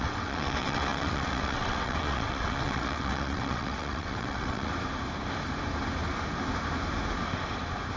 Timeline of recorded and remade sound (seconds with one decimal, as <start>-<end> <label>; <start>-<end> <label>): 0.0-4.7 remade; 4.7-8.0 recorded